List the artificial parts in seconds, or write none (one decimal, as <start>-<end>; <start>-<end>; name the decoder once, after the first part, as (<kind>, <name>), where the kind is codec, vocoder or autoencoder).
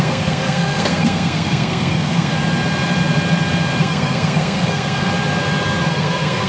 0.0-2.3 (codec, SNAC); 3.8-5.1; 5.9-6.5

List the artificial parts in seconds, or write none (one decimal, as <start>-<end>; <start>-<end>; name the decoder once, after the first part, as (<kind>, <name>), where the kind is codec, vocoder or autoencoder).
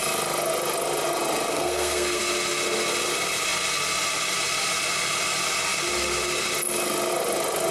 1.5-2.2 (codec, SNAC)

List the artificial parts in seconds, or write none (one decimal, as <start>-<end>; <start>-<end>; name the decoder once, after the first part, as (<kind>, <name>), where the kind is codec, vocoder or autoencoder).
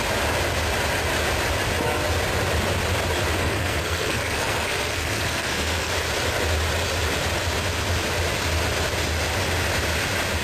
3.4-5.9 (codec, SNAC)